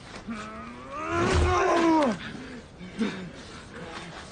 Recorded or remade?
recorded